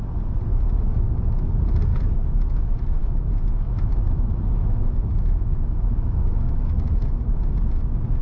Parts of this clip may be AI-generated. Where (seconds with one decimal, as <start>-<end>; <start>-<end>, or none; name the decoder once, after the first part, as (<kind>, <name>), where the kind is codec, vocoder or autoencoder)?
0.5-1.5 (autoencoder, DAC-VAE); 3.0-7.3